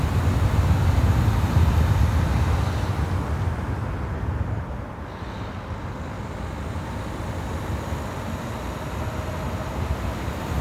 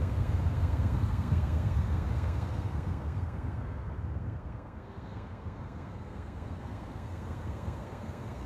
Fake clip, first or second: second